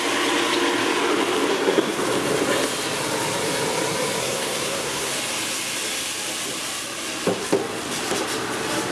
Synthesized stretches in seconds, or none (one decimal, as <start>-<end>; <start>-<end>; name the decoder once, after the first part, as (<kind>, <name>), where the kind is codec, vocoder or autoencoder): 1.5-2.0 (codec, SNAC); 4.2-5.1